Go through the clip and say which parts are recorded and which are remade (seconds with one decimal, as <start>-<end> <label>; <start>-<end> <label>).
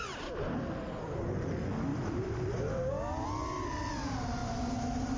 0.0-1.9 recorded; 1.9-2.5 remade; 2.5-4.4 recorded; 4.4-5.2 remade